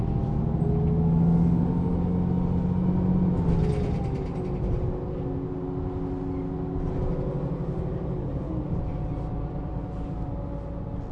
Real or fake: real